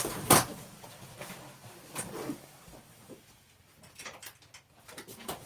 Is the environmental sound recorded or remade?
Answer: remade